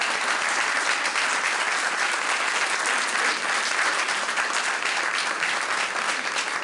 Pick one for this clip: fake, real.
real